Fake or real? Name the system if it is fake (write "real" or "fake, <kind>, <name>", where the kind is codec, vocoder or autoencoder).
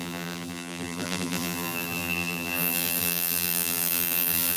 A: fake, vocoder, BigVGAN v2